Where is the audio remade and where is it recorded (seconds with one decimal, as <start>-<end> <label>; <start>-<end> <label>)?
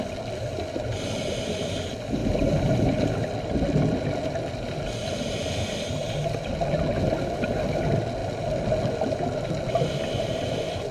0.0-10.9 recorded